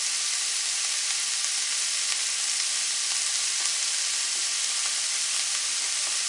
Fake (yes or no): no